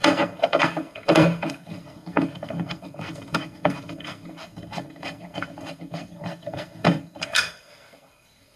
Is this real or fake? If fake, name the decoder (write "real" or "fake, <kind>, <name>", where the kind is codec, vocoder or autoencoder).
fake, codec, SNAC